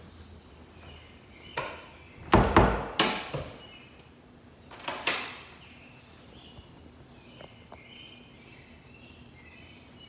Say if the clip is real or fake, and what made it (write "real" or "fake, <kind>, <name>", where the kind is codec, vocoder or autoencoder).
real